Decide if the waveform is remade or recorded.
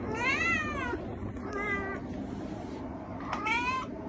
recorded